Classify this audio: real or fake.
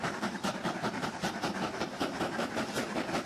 fake